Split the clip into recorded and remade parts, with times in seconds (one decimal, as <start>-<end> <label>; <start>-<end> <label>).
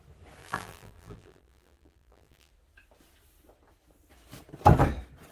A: 0.0-0.4 recorded; 0.4-2.5 remade; 2.5-5.3 recorded